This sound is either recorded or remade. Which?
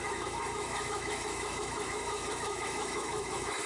remade